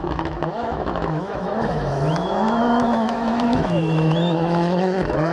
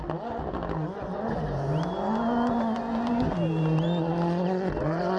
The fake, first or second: first